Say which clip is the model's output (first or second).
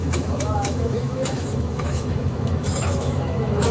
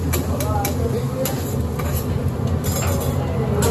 first